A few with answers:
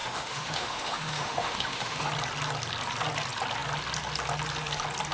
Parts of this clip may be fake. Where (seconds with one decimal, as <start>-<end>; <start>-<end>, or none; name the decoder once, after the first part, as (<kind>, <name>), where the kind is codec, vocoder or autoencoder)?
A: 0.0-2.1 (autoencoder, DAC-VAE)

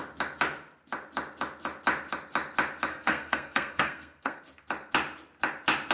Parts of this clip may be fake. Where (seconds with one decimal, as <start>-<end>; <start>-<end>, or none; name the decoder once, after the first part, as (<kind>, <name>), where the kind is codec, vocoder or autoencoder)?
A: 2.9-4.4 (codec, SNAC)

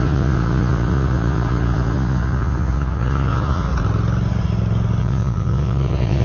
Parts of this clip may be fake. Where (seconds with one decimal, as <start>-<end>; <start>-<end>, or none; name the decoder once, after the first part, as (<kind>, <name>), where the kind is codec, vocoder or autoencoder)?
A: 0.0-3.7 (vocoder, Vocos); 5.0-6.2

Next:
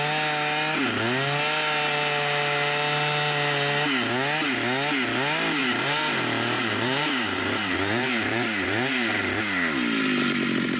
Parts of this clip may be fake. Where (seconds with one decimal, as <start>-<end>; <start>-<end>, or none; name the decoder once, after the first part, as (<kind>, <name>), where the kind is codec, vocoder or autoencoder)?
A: 5.6-9.4 (vocoder, BigVGAN v2)

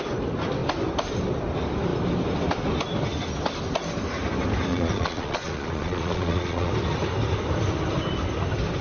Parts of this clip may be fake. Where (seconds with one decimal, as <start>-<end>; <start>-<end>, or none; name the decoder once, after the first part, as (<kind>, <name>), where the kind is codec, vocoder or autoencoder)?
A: 4.7-6.7 (vocoder, Vocos)

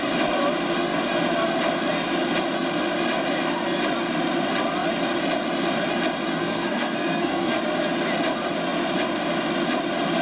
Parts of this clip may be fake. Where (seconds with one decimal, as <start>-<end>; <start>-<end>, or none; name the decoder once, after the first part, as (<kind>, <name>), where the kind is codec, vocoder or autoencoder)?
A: 6.4-7.6 (codec, SNAC)

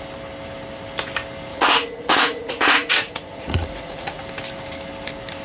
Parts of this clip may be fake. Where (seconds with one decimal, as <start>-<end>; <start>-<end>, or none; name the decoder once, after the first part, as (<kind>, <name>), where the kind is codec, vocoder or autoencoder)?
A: 1.5-4.2 (vocoder, Vocos)

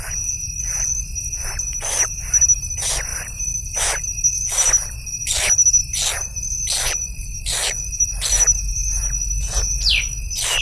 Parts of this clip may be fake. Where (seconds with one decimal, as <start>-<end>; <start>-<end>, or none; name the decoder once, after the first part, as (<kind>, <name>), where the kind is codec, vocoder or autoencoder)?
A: 3.1-3.8 (vocoder, BigVGAN v2)